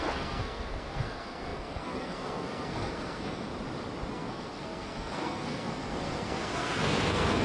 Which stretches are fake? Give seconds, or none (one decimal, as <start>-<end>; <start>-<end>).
0.0-3.5; 4.1-7.4